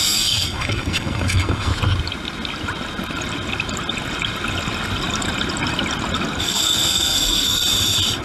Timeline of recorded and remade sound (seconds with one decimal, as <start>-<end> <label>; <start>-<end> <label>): 0.0-1.7 remade; 1.7-6.4 recorded; 6.4-7.6 remade; 7.6-8.2 recorded